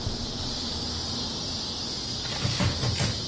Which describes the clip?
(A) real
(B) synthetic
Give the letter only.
A